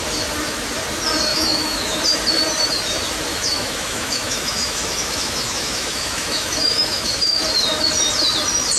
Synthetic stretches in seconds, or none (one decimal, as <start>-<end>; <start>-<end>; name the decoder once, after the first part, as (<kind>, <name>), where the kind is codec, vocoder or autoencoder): 1.3-2.0 (autoencoder, DAC-VAE); 3.3-7.4